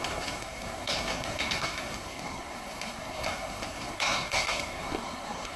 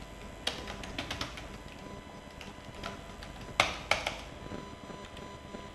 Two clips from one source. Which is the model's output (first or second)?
first